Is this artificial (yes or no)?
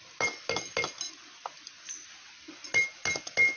no